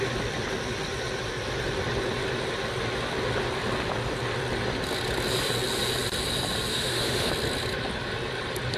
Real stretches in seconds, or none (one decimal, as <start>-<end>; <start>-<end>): 0.0-6.7; 7.3-8.8